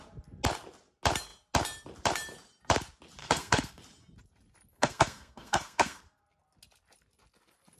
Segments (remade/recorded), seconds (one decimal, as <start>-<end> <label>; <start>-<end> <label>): 0.0-3.2 recorded; 3.2-3.8 remade; 3.8-4.7 recorded; 4.7-6.2 remade; 6.2-7.8 recorded